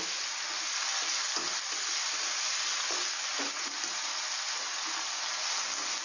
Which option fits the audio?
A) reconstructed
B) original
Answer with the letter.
B